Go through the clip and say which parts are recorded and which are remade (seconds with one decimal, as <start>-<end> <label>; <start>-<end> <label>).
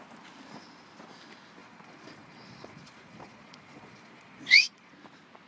0.0-1.6 recorded; 1.6-4.9 remade; 4.9-5.5 recorded